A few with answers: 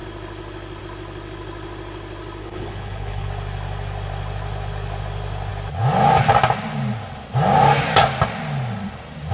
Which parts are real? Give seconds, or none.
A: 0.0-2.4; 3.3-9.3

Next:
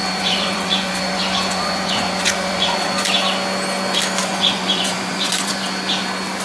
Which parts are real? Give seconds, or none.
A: 3.0-4.2; 5.6-6.4